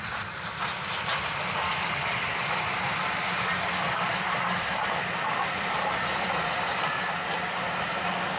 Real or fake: real